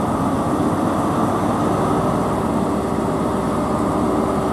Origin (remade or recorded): recorded